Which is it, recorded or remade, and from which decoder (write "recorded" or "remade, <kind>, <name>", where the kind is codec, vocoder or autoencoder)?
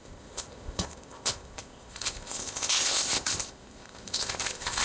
remade, codec, ZipCodec